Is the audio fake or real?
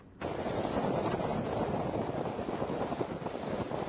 real